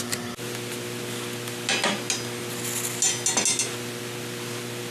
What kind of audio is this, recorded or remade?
recorded